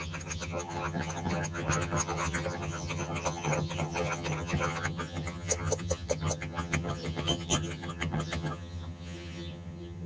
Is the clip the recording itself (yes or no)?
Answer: no